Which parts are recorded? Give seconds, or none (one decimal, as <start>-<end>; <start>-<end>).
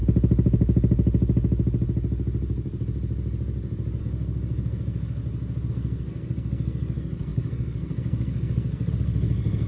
0.0-4.0; 5.2-5.7